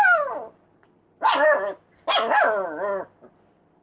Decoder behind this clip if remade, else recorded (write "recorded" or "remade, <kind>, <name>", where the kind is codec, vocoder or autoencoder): recorded